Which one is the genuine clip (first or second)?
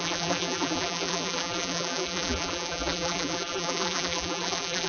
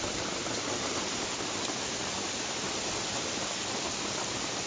second